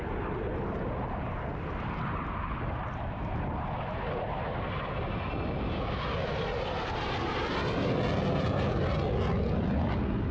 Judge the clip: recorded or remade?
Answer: recorded